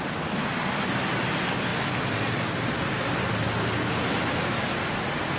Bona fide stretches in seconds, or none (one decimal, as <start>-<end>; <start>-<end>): 0.0-5.4